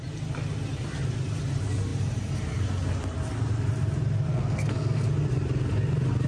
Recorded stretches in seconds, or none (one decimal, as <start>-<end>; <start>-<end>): 0.0-4.3; 5.1-6.3

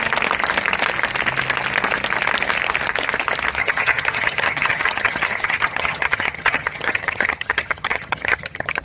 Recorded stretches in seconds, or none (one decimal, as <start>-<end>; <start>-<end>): 0.0-3.6

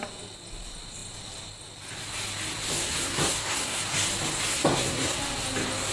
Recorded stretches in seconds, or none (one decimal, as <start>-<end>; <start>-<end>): 0.0-2.8; 3.8-4.5; 5.2-5.9